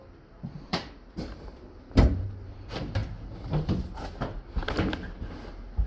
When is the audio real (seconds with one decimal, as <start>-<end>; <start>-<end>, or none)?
3.0-5.9